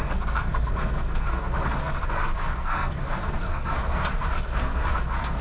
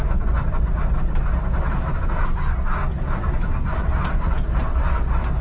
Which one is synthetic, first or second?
first